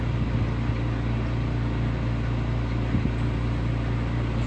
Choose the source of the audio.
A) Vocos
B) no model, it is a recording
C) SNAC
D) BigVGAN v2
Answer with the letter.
B